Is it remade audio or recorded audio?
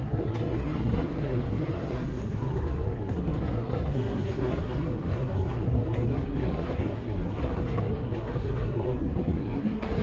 remade